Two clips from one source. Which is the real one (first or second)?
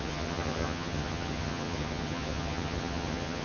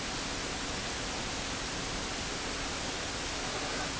second